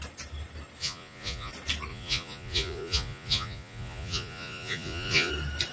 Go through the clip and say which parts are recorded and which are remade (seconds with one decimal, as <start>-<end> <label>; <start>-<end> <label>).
0.0-0.8 recorded; 0.8-1.5 remade; 1.5-1.9 recorded; 1.9-5.3 remade; 5.3-5.7 recorded

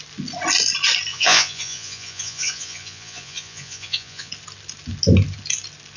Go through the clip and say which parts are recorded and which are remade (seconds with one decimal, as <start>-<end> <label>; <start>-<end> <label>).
0.0-1.1 recorded; 1.1-4.3 remade; 4.3-6.0 recorded

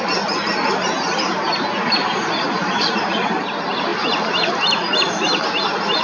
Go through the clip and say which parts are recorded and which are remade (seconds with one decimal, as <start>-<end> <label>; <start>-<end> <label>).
0.0-6.0 recorded